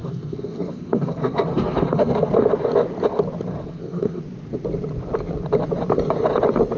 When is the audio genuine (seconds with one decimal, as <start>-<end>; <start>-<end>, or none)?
2.3-3.5; 4.2-6.8